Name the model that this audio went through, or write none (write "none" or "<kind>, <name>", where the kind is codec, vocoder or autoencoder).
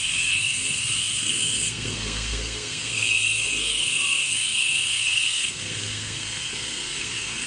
codec, SNAC